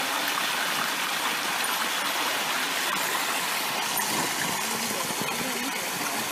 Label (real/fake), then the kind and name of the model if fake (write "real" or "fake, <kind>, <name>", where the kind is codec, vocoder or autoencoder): real